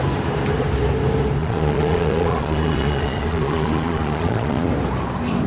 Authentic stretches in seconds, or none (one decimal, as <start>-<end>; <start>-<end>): 0.0-1.4; 4.7-5.5